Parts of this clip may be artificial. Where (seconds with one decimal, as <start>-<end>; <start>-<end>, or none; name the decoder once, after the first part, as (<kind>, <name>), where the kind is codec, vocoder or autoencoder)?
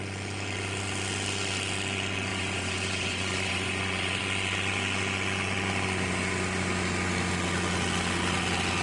2.3-4.2 (vocoder, Vocos)